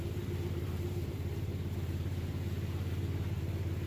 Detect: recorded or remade remade